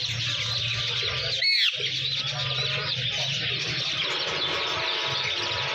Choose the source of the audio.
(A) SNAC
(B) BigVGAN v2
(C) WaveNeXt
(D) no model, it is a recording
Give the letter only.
D